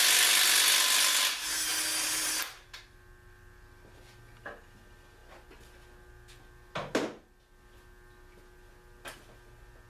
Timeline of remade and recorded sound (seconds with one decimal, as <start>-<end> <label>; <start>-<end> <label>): 0.0-9.9 recorded